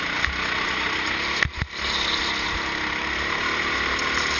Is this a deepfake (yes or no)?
no